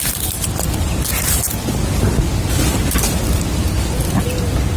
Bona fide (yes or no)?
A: yes